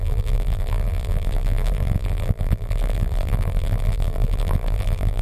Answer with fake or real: fake